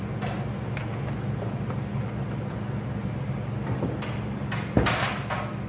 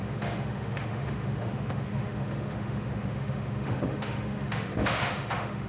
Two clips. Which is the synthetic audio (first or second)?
second